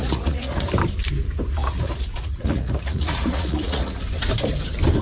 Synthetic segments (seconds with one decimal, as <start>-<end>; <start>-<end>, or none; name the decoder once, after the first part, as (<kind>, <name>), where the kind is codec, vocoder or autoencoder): 0.0-0.7 (vocoder, Vocos); 1.6-4.0